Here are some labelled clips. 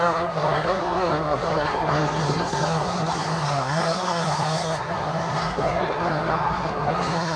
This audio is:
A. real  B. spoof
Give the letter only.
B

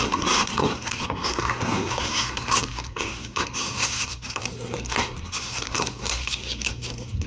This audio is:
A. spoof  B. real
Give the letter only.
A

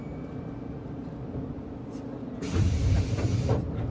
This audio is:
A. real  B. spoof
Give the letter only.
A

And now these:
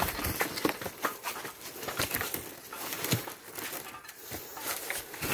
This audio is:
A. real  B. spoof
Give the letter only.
A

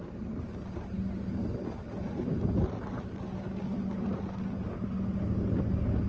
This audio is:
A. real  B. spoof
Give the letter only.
A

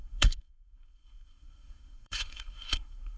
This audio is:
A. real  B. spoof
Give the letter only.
B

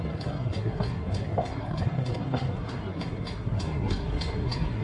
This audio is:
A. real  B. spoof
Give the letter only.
B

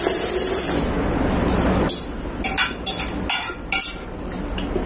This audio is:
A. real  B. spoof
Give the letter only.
A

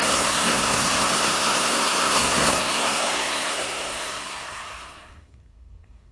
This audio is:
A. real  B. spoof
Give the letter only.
B